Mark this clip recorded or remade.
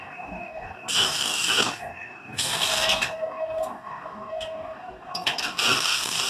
remade